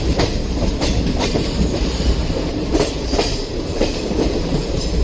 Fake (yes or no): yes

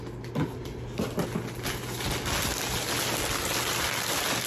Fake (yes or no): no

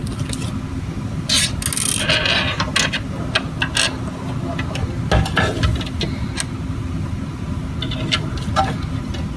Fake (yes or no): no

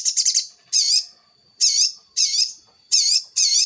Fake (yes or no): yes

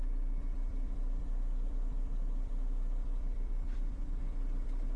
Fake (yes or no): yes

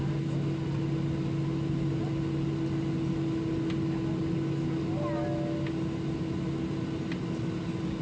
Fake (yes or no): no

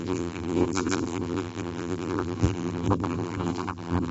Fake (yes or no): yes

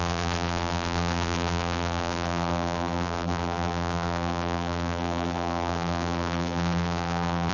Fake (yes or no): yes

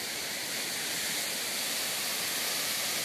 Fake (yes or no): no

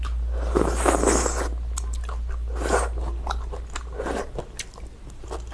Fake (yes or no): no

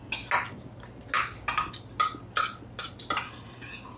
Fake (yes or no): no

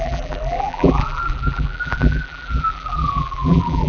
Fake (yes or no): yes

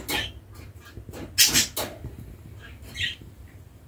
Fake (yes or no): no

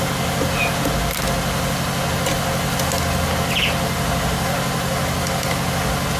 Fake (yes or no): no